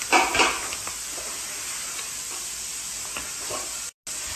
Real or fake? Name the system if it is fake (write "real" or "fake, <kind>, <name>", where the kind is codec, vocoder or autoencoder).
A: real